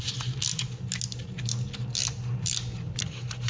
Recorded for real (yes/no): yes